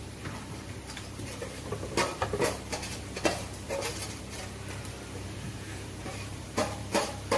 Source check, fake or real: fake